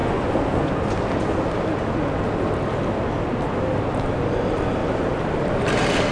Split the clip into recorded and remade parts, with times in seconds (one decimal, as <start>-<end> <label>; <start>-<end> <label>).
0.0-4.8 recorded; 4.8-6.1 remade